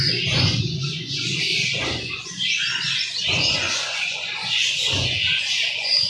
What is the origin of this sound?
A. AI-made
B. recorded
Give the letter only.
A